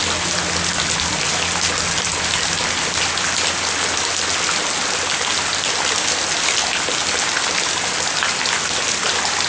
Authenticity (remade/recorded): recorded